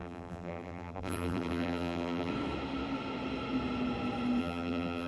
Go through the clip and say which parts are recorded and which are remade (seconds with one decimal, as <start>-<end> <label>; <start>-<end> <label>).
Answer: 0.0-2.3 remade; 2.3-4.4 recorded; 4.4-5.1 remade